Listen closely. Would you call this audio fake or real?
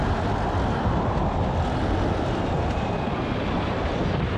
real